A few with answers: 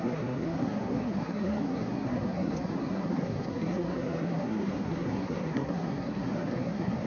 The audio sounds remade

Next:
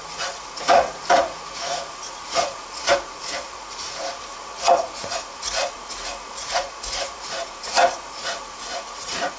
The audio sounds remade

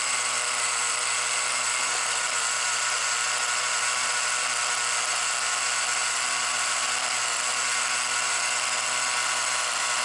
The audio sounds remade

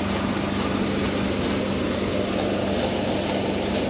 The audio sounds recorded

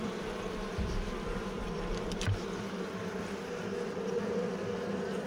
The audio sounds remade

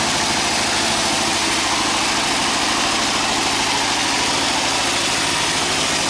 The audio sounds recorded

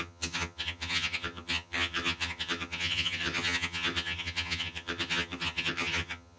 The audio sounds remade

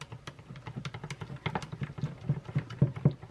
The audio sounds recorded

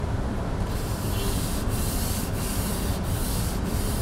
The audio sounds remade